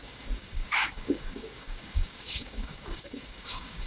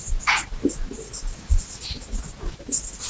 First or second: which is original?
second